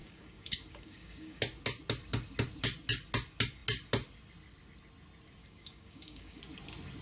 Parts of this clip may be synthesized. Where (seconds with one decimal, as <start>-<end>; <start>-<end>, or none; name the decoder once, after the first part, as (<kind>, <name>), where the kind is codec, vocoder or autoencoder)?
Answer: 0.0-1.4 (codec, DAC); 5.4-6.4

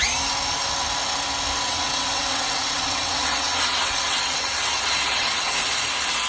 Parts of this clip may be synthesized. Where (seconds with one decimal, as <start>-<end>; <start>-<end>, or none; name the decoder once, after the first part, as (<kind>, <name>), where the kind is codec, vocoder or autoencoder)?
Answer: 1.7-5.5 (vocoder, WaveNeXt)

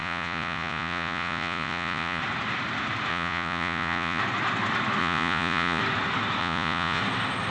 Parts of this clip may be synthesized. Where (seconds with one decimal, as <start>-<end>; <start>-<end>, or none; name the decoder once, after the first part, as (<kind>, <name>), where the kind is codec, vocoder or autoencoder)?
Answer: 0.0-2.2 (vocoder, Vocos); 3.1-4.2; 5.0-5.8; 6.4-7.0

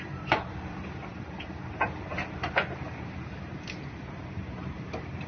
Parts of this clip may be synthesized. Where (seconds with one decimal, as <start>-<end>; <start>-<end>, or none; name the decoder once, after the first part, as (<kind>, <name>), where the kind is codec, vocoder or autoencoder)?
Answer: 0.0-5.3 (vocoder, BigVGAN v2)

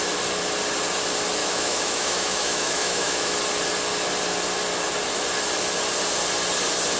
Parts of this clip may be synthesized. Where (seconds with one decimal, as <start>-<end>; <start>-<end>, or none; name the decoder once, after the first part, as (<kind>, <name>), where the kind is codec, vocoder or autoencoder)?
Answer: 1.4-3.4 (autoencoder, DAC-VAE)

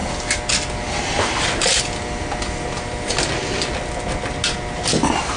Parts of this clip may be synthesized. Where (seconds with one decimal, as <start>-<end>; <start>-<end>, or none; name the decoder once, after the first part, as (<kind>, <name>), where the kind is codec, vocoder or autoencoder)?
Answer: none

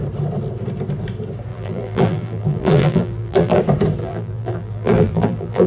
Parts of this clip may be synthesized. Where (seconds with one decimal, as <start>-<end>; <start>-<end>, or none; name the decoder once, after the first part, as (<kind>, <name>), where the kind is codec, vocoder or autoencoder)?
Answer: 1.5-3.6 (vocoder, BigVGAN v2); 4.0-5.7